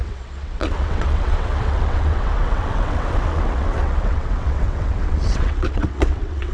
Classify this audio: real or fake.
fake